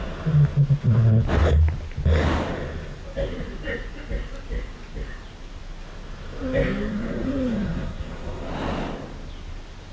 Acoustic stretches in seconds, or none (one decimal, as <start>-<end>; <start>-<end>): 0.0-6.9; 8.5-9.9